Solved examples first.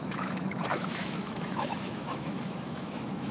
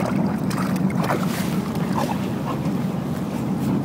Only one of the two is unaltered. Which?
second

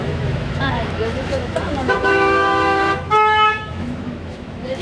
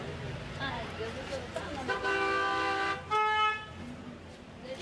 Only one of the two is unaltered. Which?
second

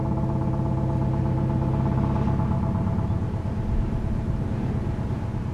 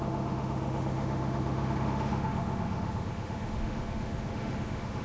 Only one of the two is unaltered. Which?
first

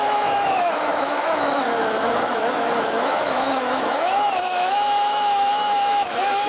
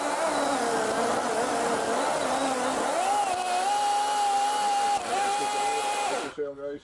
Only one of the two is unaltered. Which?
second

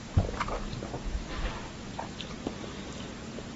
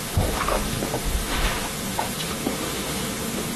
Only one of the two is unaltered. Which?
first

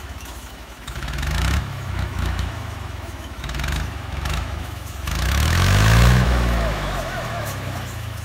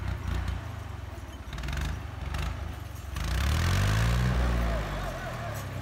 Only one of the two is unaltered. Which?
second